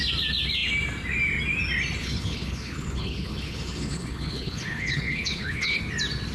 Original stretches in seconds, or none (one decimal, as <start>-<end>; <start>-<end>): 0.0-2.0; 5.8-6.3